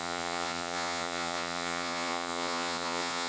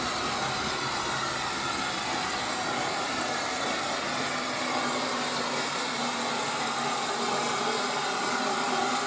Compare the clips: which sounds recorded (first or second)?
second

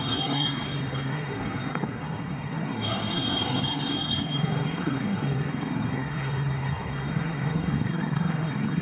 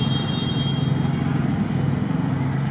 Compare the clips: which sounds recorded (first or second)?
second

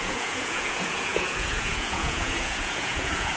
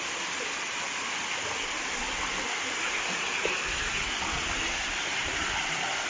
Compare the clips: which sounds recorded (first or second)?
second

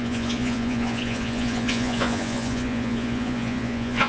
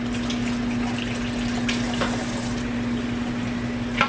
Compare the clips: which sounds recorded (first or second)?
second